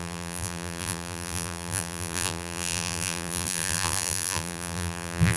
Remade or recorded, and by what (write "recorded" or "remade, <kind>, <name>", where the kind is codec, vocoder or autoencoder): remade, vocoder, BigVGAN v2